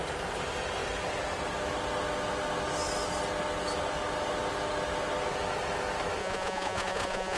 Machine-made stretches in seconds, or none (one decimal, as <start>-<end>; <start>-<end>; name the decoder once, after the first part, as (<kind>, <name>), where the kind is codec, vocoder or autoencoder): 6.2-7.4 (vocoder, Vocos)